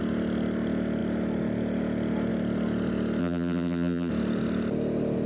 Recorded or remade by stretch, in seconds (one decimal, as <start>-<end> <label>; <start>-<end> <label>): 0.0-3.2 recorded; 3.2-4.1 remade; 4.1-5.3 recorded